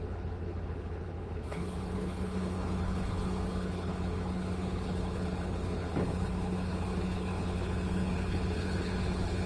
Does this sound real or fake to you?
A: fake